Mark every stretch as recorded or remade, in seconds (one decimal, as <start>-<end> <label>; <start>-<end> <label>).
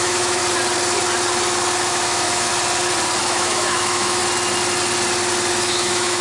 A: 0.0-0.4 remade; 0.4-1.9 recorded; 1.9-2.5 remade; 2.5-3.2 recorded; 3.2-4.2 remade; 4.2-5.5 recorded; 5.5-6.2 remade